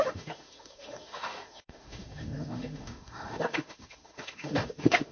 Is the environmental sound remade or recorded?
remade